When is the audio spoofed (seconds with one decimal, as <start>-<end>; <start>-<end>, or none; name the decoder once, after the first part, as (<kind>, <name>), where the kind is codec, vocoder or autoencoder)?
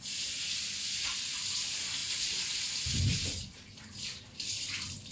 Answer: none